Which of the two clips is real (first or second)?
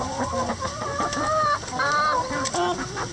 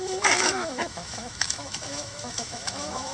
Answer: first